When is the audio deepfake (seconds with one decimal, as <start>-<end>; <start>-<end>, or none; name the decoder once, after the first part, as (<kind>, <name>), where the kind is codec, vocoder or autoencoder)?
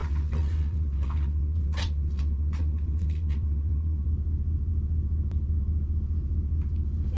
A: 0.0-4.1 (vocoder, WaveNeXt)